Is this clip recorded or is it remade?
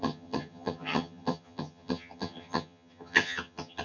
remade